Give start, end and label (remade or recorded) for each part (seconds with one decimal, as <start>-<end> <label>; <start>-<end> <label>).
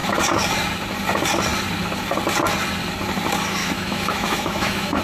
0.0-3.6 recorded; 3.6-5.0 remade